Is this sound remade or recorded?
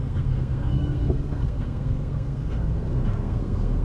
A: remade